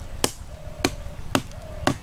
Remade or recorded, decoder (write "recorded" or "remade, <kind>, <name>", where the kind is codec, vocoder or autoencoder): recorded